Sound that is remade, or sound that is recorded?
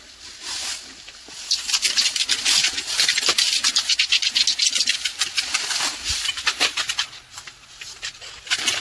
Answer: recorded